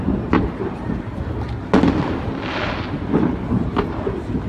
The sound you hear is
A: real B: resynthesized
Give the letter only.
A